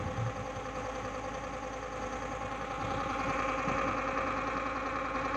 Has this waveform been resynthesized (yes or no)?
no